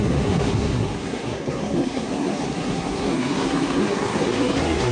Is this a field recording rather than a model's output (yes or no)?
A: no